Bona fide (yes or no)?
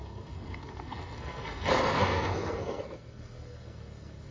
no